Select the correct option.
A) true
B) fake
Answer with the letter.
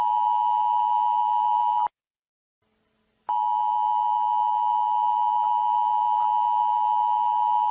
A